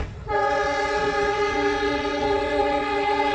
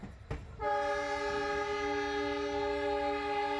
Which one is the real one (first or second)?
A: second